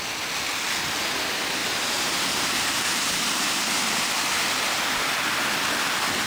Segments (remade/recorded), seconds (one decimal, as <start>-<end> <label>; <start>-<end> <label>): 0.0-1.6 recorded; 1.6-4.2 remade; 4.2-6.3 recorded